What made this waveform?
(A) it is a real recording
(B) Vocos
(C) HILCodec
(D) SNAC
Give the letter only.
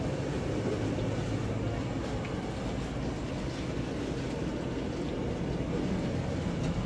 A